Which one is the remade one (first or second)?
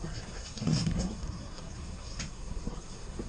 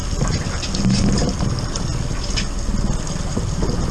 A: first